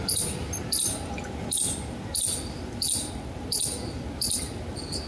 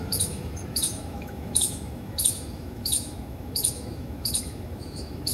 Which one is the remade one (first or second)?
second